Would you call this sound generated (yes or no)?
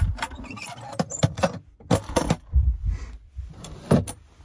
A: no